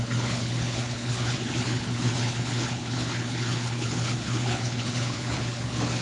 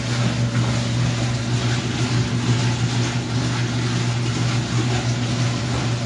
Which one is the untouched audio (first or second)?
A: second